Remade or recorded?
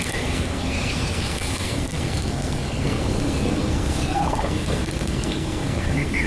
remade